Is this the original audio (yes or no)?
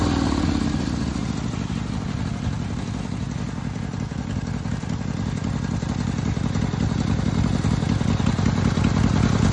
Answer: yes